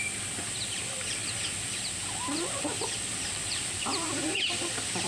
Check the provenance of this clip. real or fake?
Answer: fake